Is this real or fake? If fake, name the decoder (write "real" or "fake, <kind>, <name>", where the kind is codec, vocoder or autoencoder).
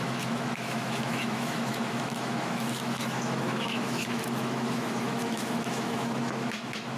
fake, autoencoder, DAC-VAE